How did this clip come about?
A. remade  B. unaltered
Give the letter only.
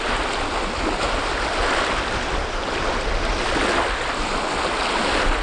B